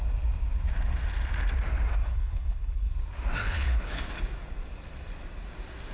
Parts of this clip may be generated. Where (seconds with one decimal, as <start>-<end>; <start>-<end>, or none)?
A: 2.0-2.9; 3.4-4.0